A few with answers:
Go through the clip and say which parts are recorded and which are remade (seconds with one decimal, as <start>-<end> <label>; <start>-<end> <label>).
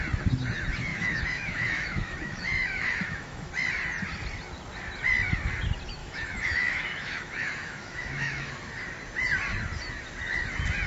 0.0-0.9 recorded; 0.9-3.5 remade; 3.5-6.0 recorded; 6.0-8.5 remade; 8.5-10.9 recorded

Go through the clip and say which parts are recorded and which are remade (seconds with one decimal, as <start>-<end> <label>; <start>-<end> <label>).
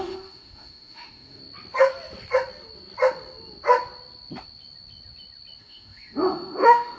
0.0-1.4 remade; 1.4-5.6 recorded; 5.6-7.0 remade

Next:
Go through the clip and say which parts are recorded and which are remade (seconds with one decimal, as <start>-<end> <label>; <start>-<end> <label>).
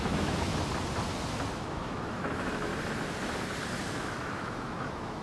0.0-0.5 remade; 0.5-1.5 recorded; 1.5-2.7 remade; 2.7-3.9 recorded; 3.9-5.2 remade